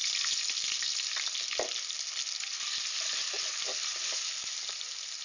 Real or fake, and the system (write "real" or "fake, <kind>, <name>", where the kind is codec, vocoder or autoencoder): real